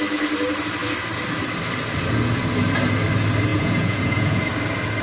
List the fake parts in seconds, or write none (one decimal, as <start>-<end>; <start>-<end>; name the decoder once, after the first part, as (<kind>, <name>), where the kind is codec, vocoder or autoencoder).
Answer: 3.5-4.4 (vocoder, Vocos)